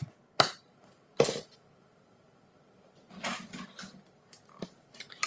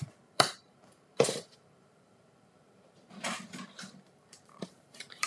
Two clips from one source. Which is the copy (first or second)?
second